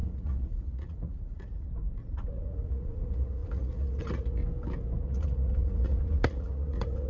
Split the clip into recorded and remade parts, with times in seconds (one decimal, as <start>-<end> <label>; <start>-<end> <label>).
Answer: 0.0-4.4 remade; 4.4-5.0 recorded; 5.0-7.1 remade